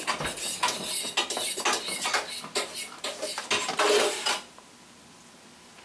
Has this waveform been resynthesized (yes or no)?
no